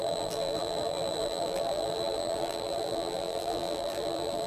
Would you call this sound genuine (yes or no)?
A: no